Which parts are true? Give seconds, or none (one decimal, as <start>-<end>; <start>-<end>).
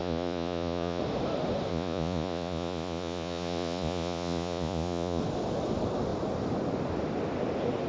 1.0-1.7; 5.2-7.9